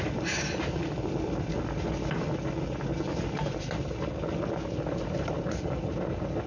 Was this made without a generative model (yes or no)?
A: yes